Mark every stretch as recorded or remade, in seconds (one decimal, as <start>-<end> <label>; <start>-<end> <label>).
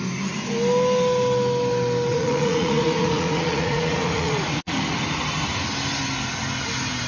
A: 0.0-2.1 recorded; 2.1-5.2 remade; 5.2-7.1 recorded